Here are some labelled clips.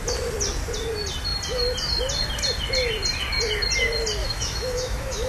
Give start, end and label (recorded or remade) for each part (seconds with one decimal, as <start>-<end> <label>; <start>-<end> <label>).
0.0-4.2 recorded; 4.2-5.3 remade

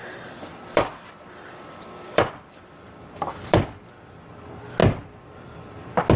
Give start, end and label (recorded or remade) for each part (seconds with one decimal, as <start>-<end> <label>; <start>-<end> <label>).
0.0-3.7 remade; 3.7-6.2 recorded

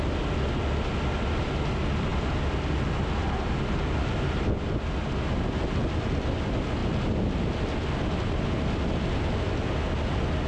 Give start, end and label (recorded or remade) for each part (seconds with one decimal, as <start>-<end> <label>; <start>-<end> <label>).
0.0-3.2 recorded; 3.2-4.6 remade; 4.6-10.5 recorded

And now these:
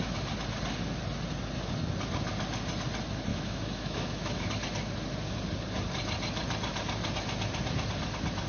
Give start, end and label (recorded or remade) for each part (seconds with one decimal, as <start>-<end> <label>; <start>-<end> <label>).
0.0-3.3 recorded; 3.3-4.5 remade; 4.5-8.5 recorded